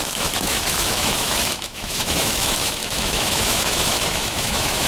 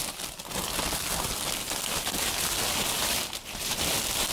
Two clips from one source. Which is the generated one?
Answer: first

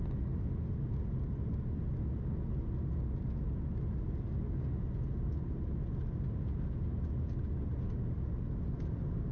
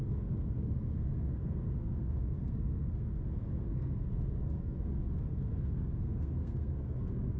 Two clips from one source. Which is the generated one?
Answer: second